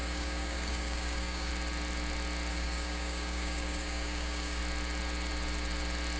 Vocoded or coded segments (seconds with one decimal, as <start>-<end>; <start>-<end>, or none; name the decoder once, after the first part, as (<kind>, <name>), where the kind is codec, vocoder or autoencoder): 0.0-1.5 (codec, DAC); 2.5-4.6